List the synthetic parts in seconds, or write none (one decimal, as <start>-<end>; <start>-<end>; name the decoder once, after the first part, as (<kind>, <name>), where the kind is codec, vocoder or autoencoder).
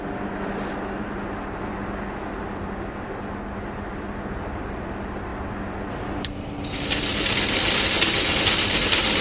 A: none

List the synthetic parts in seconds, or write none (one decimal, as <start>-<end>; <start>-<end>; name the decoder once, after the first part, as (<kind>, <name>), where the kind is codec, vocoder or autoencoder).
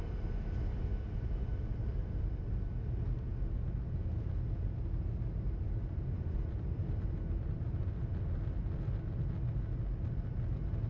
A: none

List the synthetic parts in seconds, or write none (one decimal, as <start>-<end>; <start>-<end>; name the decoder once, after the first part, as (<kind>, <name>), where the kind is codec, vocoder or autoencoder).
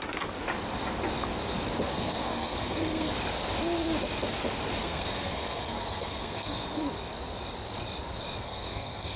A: 1.9-3.1 (codec, SNAC); 4.8-6.8; 8.4-9.2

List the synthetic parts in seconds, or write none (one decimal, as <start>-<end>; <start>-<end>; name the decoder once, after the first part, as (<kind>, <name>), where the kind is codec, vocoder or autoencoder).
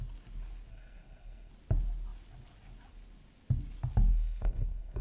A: 0.7-1.5 (codec, SNAC); 4.1-5.0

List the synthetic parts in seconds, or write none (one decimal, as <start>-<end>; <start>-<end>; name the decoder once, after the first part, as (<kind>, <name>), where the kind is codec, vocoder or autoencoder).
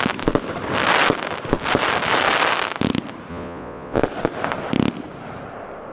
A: 3.3-4.0 (vocoder, Vocos)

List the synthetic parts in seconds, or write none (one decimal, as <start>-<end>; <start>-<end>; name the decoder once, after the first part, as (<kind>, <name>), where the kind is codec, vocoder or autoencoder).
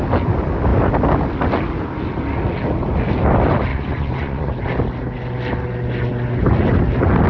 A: 3.7-4.5 (vocoder, Vocos)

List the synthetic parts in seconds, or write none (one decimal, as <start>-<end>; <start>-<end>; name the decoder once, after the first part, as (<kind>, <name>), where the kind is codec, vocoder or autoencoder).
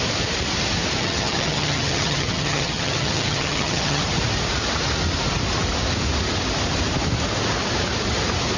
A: 1.0-4.0 (vocoder, HiFi-GAN)